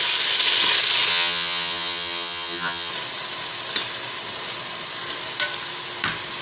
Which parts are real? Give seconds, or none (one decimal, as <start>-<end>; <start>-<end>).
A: 0.0-1.1; 2.9-6.4